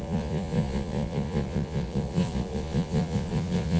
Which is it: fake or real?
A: fake